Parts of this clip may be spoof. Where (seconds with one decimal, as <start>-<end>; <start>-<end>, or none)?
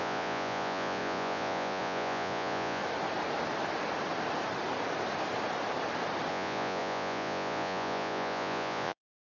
0.0-2.8; 6.3-9.3